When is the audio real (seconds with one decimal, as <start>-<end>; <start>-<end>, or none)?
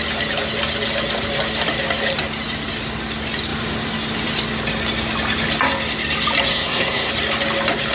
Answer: 0.0-6.5; 7.1-7.9